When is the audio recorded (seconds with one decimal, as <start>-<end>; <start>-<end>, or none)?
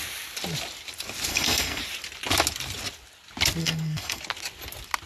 0.0-1.3; 1.8-3.6; 4.2-5.1